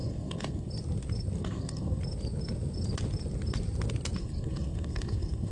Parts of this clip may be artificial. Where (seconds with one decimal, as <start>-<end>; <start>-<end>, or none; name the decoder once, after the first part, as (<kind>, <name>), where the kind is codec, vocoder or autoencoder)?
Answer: 0.0-0.7 (codec, SNAC); 1.4-2.0; 4.2-5.5